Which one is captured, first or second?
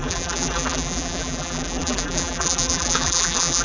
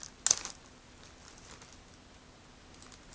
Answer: second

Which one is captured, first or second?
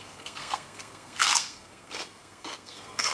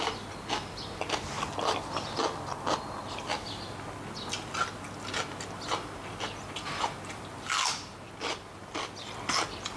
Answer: second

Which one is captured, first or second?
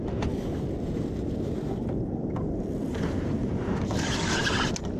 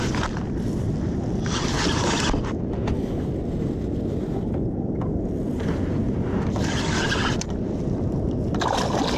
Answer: second